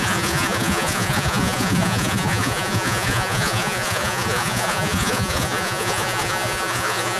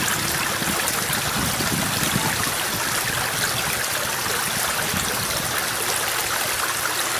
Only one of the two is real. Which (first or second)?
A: second